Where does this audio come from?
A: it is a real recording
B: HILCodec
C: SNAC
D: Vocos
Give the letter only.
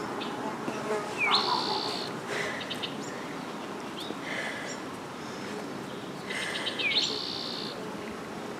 A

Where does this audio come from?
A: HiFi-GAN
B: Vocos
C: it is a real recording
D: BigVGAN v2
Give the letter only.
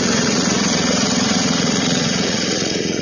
B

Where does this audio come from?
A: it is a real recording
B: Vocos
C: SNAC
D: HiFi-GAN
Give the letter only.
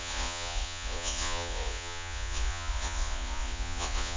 B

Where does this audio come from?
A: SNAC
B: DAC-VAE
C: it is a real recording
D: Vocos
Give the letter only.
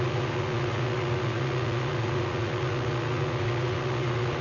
D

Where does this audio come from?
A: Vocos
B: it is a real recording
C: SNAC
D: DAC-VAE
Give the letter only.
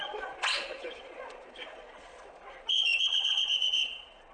A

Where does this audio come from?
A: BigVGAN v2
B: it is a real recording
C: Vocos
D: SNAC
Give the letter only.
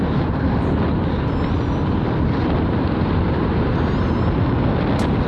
B